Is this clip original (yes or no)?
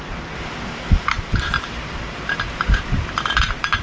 no